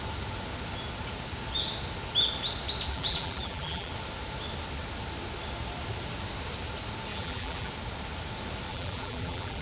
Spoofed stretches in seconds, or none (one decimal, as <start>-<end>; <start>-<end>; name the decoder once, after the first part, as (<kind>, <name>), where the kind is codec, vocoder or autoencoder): 2.9-3.9 (vocoder, BigVGAN v2); 7.1-7.7; 8.7-9.6